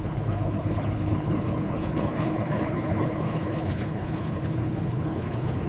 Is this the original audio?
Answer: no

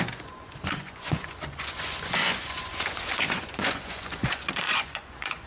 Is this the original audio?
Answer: no